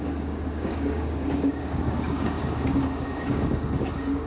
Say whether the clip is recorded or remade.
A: remade